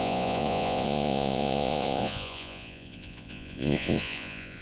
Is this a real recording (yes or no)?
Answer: no